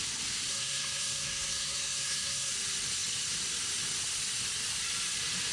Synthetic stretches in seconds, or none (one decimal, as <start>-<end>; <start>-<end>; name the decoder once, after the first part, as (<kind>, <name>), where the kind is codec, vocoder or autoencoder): 0.5-2.5 (codec, SNAC)